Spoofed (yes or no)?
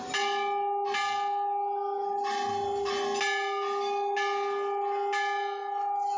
no